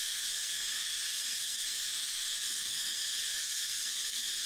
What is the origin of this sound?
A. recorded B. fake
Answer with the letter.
B